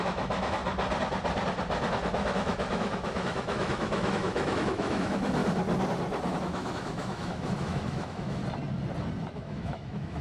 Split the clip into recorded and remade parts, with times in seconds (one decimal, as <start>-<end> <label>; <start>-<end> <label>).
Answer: 0.0-0.6 remade; 0.6-2.1 recorded; 2.1-5.4 remade; 5.4-6.4 recorded; 6.4-8.4 remade; 8.4-9.3 recorded; 9.3-10.2 remade